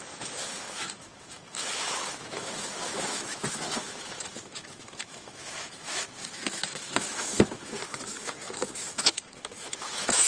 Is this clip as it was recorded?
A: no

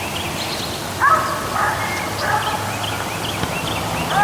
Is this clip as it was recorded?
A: yes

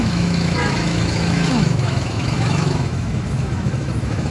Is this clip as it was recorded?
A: no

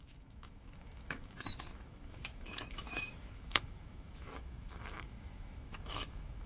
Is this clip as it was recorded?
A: no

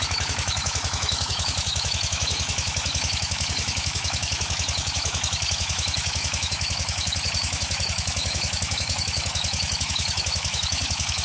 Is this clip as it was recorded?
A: no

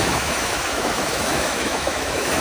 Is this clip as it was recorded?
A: no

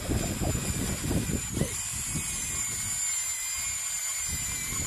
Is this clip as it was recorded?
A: yes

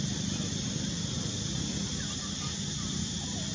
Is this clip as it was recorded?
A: yes